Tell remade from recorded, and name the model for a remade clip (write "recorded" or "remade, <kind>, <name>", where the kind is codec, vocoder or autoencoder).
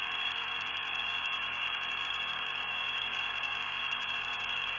remade, codec, DAC